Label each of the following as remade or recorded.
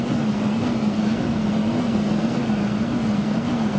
remade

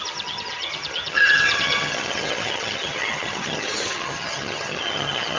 remade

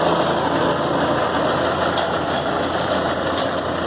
recorded